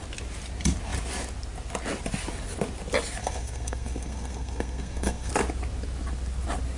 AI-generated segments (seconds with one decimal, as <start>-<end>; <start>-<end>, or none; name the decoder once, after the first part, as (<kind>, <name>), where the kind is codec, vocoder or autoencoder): 3.2-5.3 (codec, SNAC)